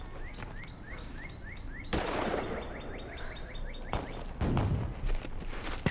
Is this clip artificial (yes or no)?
no